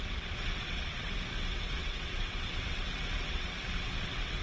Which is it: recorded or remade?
remade